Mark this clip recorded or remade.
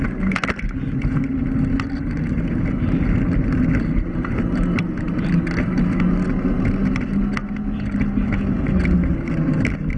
recorded